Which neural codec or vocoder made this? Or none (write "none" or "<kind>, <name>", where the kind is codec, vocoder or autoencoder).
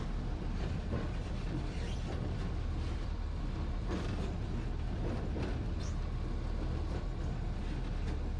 vocoder, BigVGAN v2